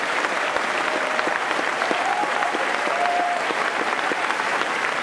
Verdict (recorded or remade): remade